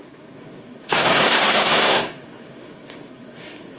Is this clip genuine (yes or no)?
no